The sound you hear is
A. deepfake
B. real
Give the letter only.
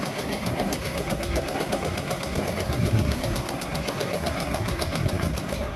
A